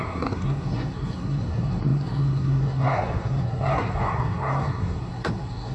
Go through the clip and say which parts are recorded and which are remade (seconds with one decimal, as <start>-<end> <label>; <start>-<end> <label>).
0.0-5.7 remade